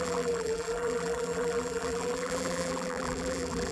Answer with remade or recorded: remade